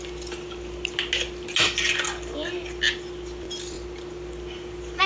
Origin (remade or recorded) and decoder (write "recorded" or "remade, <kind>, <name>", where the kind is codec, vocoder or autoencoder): recorded